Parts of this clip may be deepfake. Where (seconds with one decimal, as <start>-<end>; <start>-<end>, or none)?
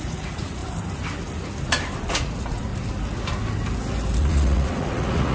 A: 0.0-0.6; 2.1-2.7; 4.2-5.3